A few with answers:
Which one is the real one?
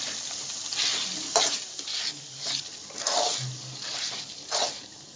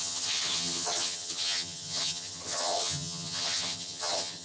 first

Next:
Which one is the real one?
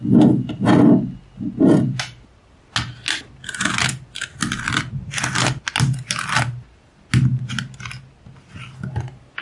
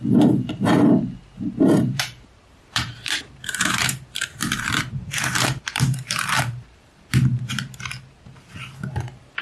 first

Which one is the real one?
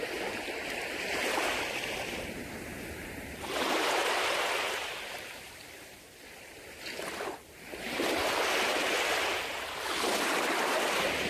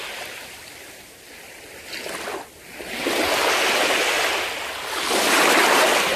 second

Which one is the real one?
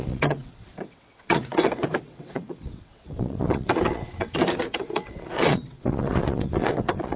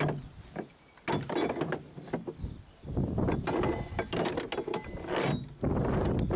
second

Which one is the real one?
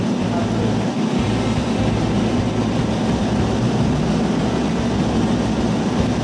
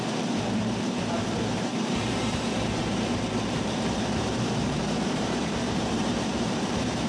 first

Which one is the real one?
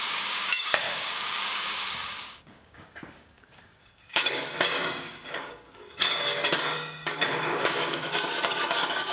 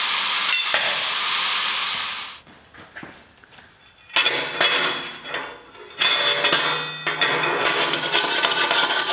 second